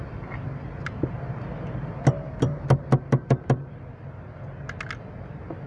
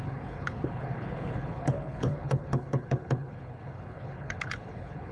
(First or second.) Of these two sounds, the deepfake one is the second